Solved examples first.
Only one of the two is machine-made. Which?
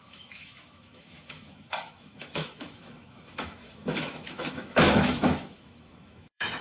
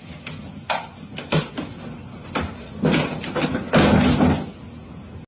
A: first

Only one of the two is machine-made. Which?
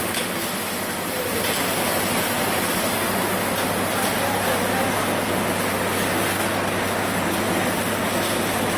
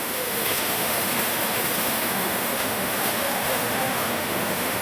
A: second